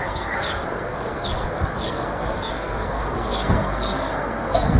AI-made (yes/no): yes